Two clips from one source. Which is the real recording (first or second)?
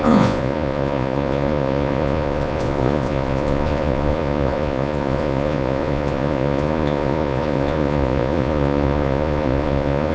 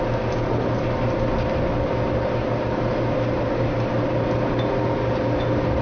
second